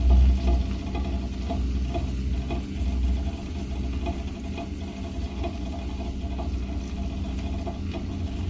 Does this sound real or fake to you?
real